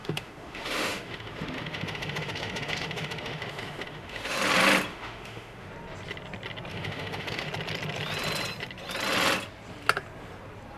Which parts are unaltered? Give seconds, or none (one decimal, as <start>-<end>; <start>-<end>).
4.4-4.9; 5.7-6.7; 7.5-10.8